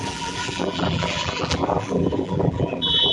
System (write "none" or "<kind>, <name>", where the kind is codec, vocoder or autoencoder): vocoder, BigVGAN v2